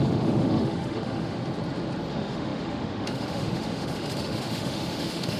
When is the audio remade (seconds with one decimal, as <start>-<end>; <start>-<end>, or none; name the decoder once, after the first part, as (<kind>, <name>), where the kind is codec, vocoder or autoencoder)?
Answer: 0.0-1.4 (autoencoder, DAC-VAE); 2.1-5.4